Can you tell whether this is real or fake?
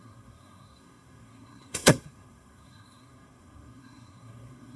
fake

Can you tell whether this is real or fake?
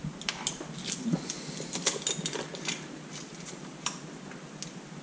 real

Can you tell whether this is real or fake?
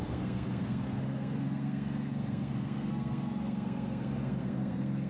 fake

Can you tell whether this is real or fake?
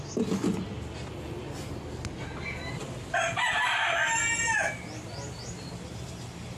real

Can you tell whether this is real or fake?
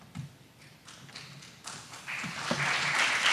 real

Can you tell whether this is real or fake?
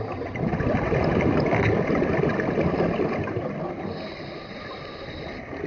real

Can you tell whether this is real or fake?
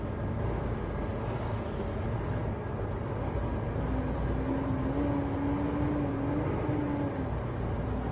real